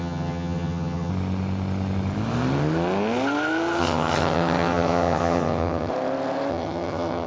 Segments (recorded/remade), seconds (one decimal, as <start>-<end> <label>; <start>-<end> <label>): 0.0-1.1 remade; 1.1-3.8 recorded; 3.8-5.9 remade; 5.9-6.5 recorded; 6.5-7.3 remade